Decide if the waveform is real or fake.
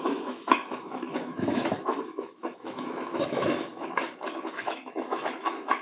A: fake